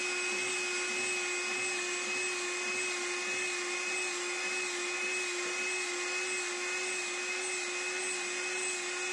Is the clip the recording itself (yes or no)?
yes